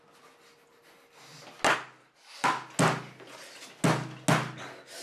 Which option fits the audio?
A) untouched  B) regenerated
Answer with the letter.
A